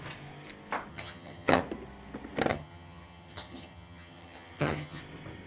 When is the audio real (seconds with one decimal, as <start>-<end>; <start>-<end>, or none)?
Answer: 0.0-0.9; 1.6-2.5; 5.0-5.5